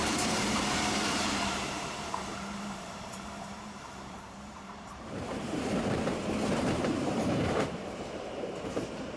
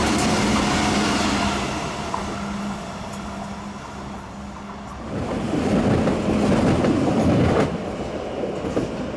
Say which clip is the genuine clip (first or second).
second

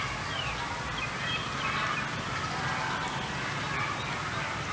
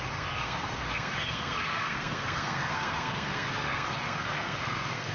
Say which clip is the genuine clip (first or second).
first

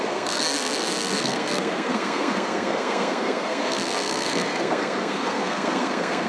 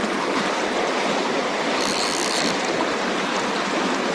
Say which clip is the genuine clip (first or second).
second